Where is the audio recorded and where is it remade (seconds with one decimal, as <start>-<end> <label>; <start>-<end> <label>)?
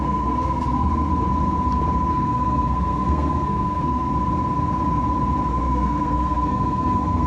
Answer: 0.0-1.1 remade; 1.1-2.1 recorded; 2.1-4.1 remade; 4.1-5.5 recorded; 5.5-7.3 remade